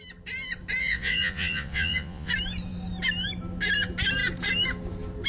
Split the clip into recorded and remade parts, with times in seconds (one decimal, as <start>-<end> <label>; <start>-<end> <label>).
0.0-0.8 recorded; 0.8-2.3 remade; 2.3-5.3 recorded